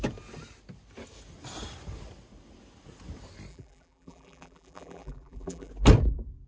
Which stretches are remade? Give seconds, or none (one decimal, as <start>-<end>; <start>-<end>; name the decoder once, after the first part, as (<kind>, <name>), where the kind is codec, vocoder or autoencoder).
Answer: 3.5-5.7 (vocoder, BigVGAN v2)